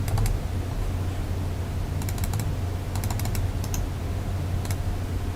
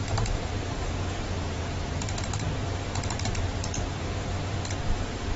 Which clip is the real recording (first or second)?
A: first